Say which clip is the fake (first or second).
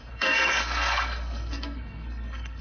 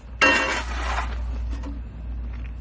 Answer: first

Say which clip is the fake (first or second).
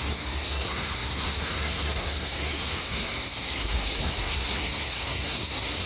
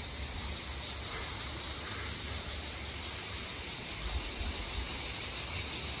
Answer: first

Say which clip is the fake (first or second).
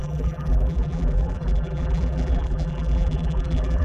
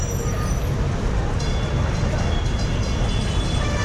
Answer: first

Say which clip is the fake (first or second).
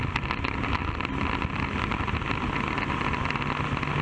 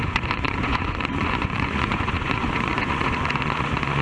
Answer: second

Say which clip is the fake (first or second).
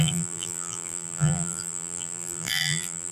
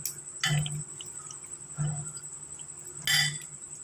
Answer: first